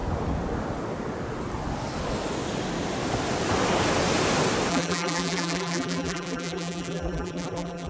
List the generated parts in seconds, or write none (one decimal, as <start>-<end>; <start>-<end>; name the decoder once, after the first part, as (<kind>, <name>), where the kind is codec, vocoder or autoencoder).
4.7-7.9 (vocoder, BigVGAN v2)